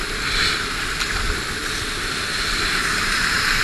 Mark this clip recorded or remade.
recorded